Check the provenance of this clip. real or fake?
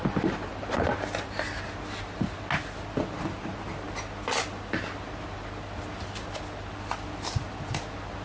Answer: real